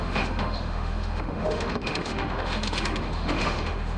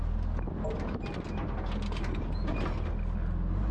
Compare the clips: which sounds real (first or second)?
second